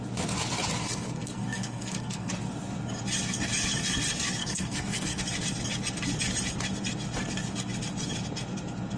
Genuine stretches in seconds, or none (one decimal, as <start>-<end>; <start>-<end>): 0.0-0.8; 2.3-4.4; 5.2-9.0